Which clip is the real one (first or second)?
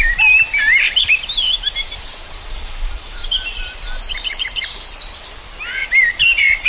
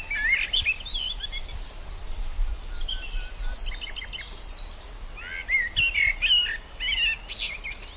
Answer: second